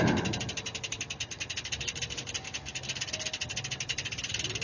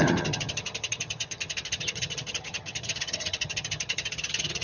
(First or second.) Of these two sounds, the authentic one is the first